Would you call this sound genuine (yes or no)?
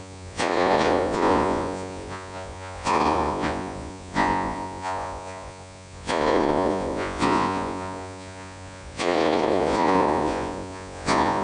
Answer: no